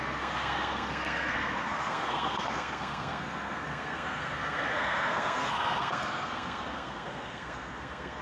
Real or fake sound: fake